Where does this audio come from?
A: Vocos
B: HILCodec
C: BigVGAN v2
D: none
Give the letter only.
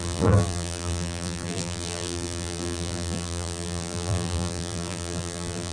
C